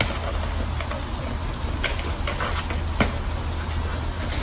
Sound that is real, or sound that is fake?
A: real